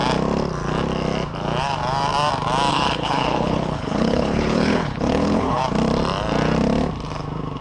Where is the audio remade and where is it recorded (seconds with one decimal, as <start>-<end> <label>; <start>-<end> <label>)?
0.0-2.7 recorded; 2.7-5.6 remade; 5.6-7.6 recorded